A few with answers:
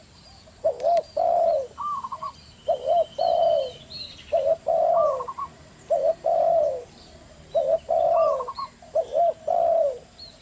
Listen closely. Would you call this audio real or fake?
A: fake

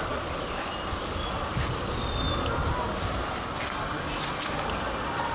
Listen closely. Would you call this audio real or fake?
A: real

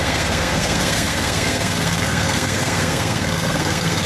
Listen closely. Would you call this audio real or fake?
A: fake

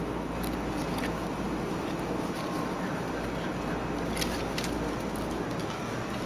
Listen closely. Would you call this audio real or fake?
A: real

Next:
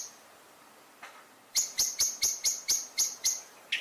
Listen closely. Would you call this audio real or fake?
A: real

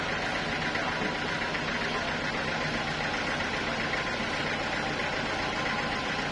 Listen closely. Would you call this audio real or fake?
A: real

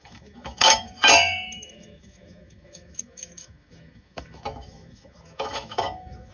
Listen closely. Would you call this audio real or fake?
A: fake